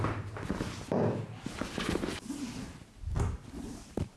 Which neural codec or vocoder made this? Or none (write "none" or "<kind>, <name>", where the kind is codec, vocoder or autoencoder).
none